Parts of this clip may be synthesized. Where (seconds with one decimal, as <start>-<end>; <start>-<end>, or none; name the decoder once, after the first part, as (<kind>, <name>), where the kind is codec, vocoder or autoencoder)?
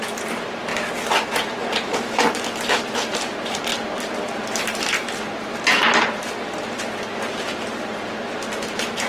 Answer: 0.0-0.7 (vocoder, BigVGAN v2); 1.4-3.7; 4.6-9.1